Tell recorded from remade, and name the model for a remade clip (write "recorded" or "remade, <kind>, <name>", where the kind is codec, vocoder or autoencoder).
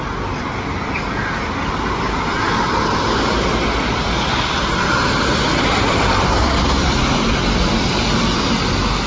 recorded